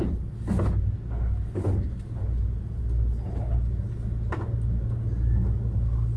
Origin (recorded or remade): recorded